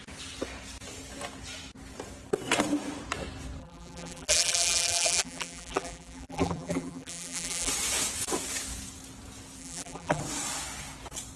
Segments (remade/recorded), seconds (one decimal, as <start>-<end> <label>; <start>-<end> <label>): 0.0-3.6 recorded; 3.6-7.7 remade; 7.7-9.6 recorded; 9.6-10.2 remade; 10.2-11.4 recorded